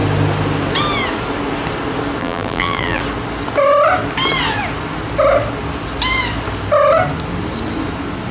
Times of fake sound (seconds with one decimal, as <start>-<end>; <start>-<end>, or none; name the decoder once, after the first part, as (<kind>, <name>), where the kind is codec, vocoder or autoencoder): 2.2-3.0 (vocoder, BigVGAN v2)